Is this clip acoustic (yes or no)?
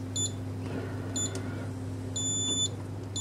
yes